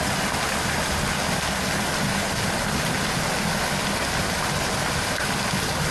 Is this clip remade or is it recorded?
recorded